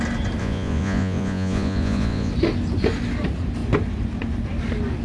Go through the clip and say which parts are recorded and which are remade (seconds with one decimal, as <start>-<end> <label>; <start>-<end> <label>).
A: 0.0-0.4 recorded; 0.4-2.3 remade; 2.3-5.0 recorded